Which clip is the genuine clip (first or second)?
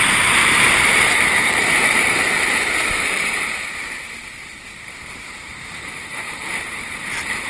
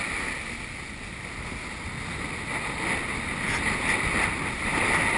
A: second